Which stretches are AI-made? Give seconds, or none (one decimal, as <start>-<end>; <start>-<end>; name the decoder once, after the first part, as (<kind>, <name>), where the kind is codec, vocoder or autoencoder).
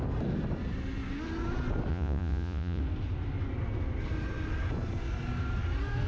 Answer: 1.9-2.8 (vocoder, Vocos)